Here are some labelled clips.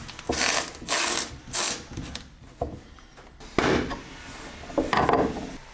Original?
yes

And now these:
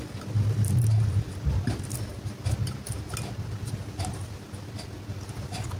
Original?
yes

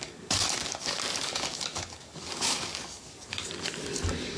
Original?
no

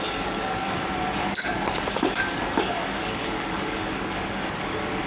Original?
no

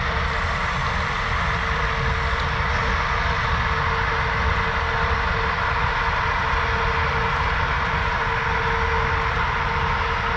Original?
yes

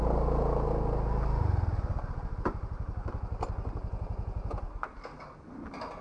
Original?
yes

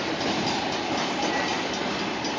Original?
yes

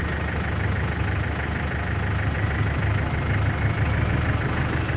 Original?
yes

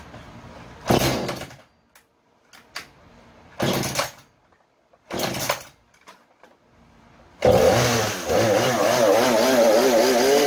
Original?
yes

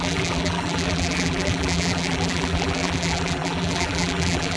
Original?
no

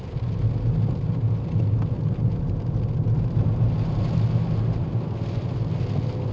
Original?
yes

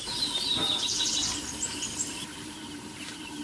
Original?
no